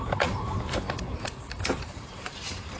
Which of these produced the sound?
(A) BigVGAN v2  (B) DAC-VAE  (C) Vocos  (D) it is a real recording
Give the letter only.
A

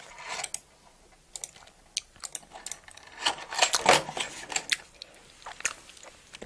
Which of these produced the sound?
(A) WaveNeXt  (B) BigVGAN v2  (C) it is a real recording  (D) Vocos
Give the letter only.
C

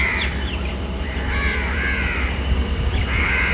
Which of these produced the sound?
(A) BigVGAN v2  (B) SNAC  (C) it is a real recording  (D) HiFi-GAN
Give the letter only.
A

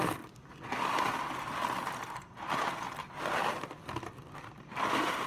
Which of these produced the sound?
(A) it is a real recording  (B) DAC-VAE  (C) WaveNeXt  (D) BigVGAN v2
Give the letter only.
A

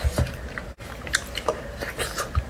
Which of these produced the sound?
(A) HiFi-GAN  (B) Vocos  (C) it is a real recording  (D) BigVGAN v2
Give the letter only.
D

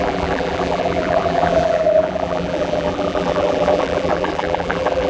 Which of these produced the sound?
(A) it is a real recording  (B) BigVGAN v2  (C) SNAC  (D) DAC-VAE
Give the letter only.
B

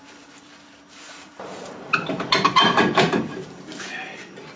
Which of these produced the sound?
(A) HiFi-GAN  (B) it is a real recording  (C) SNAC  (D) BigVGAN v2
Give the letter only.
D